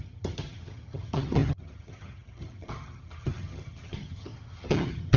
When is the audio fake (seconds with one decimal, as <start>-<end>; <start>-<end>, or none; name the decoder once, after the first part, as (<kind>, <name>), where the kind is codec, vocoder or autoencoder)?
0.0-5.2 (vocoder, HiFi-GAN)